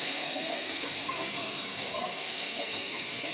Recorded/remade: remade